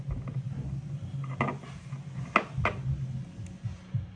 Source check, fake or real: real